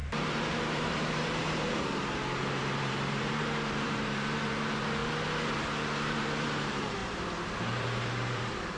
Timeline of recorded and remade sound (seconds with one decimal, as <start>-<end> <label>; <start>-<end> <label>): 0.0-5.0 remade; 5.0-6.1 recorded; 6.1-7.0 remade; 7.0-7.6 recorded; 7.6-8.8 remade